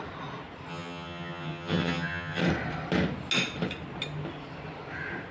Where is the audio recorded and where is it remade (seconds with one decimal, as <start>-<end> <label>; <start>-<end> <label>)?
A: 0.0-0.7 recorded; 0.7-2.4 remade; 2.4-5.3 recorded